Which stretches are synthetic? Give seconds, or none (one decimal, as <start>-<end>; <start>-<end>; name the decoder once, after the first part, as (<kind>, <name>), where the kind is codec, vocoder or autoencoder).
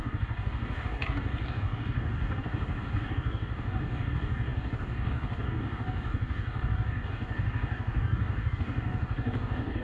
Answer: 0.0-9.8 (codec, DAC)